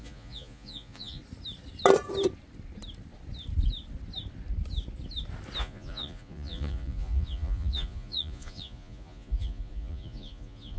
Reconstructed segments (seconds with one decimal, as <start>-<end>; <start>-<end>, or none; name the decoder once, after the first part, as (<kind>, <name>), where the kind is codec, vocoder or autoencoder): 0.0-1.2 (vocoder, Vocos); 5.6-10.8